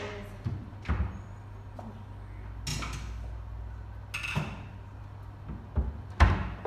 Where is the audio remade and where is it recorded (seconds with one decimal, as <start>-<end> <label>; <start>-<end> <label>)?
0.0-6.7 recorded